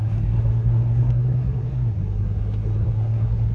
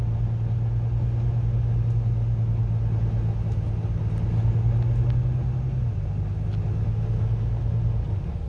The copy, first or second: first